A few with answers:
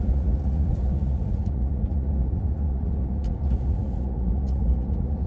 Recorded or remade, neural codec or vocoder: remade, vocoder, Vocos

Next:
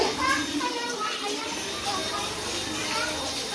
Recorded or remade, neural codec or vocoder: recorded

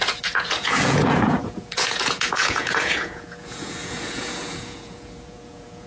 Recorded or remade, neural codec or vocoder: remade, vocoder, Vocos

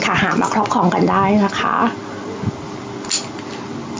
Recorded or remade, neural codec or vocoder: recorded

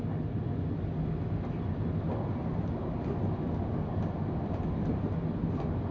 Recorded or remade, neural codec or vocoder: recorded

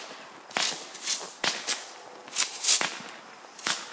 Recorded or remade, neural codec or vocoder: recorded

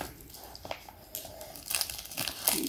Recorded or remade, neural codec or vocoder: recorded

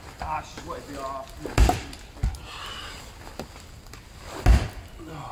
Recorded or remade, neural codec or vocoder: recorded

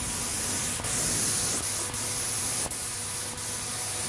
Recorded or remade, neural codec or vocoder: recorded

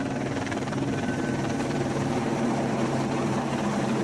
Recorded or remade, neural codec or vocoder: remade, vocoder, BigVGAN v2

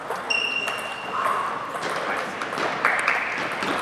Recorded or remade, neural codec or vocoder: recorded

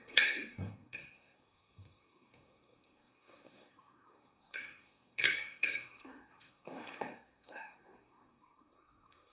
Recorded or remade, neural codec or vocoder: remade, codec, SNAC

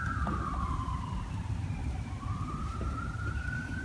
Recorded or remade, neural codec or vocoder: remade, vocoder, BigVGAN v2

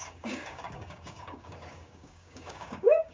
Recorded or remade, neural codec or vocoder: remade, codec, DAC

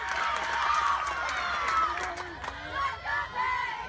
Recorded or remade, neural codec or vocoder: recorded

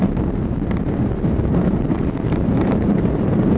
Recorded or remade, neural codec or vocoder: remade, vocoder, BigVGAN v2